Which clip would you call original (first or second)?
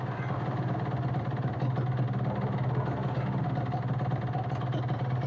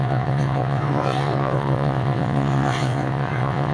first